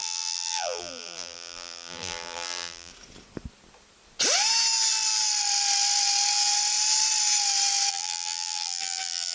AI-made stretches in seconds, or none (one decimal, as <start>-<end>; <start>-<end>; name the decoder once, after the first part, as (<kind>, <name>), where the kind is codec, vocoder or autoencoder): 0.0-2.9 (vocoder, BigVGAN v2); 7.9-9.3